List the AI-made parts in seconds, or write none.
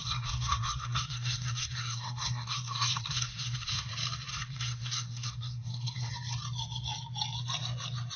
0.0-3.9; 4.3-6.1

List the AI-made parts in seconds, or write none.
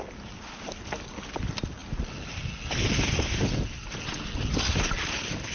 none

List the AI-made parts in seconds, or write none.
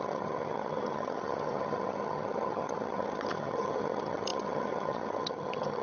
0.0-5.8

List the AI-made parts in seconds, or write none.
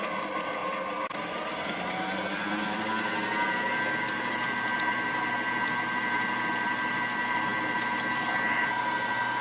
none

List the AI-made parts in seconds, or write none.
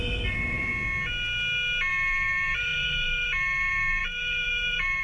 0.0-0.7; 1.9-5.0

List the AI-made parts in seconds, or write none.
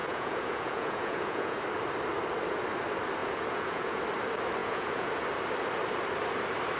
0.0-1.6; 3.2-4.0; 4.6-5.1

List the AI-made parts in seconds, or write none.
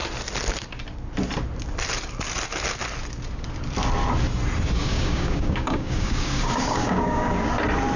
4.8-7.5